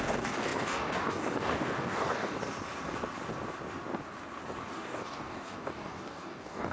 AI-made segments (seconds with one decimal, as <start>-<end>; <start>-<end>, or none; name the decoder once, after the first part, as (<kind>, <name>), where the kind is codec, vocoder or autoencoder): 0.0-2.4 (codec, DAC); 4.7-6.7